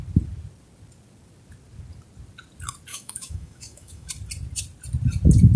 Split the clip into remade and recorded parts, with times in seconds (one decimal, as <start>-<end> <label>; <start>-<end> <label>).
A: 0.0-2.9 recorded; 2.9-4.1 remade; 4.1-5.6 recorded